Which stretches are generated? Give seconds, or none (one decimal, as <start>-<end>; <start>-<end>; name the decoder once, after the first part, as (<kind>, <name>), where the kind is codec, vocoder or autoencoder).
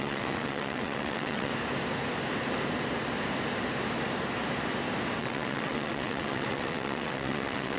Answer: 0.0-1.5 (vocoder, WaveNeXt); 5.2-7.8